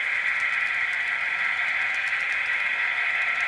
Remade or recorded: recorded